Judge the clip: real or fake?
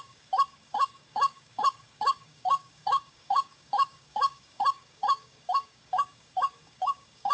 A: fake